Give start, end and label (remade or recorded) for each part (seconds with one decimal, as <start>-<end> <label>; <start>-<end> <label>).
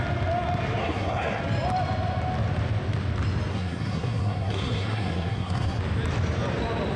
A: 0.0-0.8 recorded; 0.8-1.4 remade; 1.4-3.5 recorded; 3.5-5.8 remade; 5.8-7.0 recorded